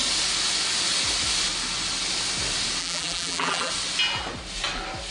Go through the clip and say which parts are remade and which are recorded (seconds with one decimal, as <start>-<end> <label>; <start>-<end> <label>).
0.0-2.8 recorded; 2.8-3.7 remade; 3.7-5.1 recorded